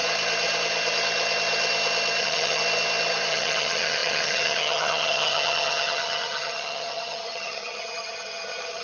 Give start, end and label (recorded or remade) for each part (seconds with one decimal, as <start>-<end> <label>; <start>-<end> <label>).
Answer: 0.0-2.2 recorded; 2.2-2.6 remade; 2.6-3.3 recorded; 3.3-8.8 remade